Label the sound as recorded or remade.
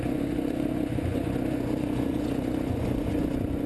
remade